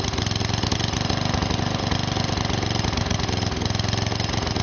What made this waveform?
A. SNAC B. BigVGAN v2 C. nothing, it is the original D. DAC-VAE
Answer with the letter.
C